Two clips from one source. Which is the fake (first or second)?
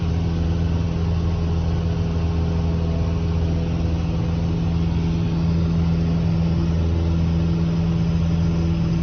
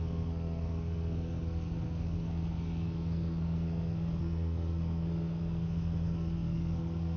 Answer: second